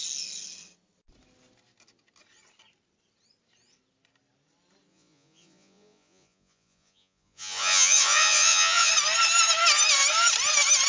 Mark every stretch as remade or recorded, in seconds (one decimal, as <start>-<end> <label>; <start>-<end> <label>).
0.0-4.9 recorded; 4.9-8.9 remade; 8.9-10.9 recorded